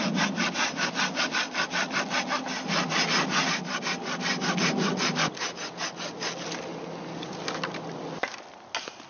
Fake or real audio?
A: real